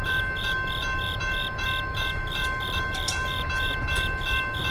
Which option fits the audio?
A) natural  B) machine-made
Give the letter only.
B